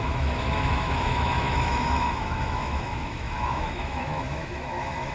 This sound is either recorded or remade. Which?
remade